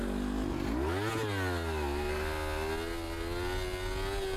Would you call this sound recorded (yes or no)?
yes